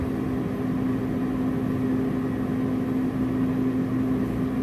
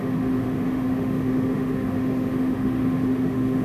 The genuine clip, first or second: first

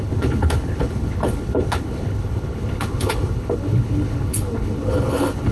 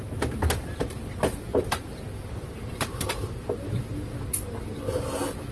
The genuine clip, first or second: second